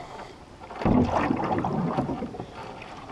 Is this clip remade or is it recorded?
recorded